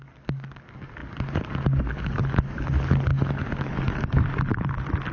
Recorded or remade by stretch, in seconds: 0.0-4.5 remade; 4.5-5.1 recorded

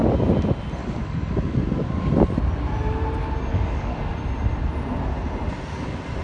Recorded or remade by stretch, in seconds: 0.0-0.8 recorded; 0.8-2.1 remade; 2.1-3.5 recorded; 3.5-4.0 remade; 4.0-6.2 recorded

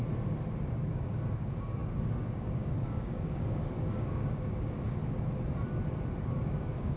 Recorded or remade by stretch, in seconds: 0.0-0.9 recorded; 0.9-5.0 remade; 5.0-6.2 recorded; 6.2-7.0 remade

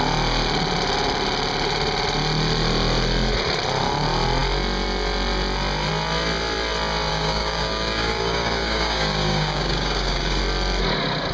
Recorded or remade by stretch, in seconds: 0.0-7.1 recorded; 7.1-10.4 remade; 10.4-11.3 recorded

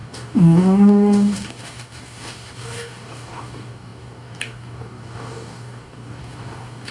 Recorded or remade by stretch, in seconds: 0.0-6.9 remade

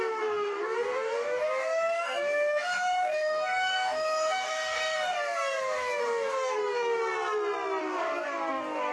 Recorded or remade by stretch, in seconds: 0.0-7.0 remade; 7.0-7.8 recorded; 7.8-8.9 remade

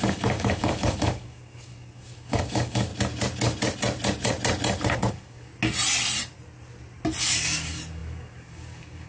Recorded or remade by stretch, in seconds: 0.0-2.9 remade; 2.9-5.1 recorded; 5.1-5.5 remade; 5.5-7.2 recorded; 7.2-9.1 remade